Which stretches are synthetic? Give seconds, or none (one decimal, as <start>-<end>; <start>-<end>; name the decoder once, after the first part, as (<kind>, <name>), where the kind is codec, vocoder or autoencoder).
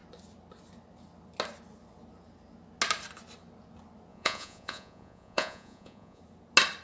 4.1-6.2 (vocoder, Vocos)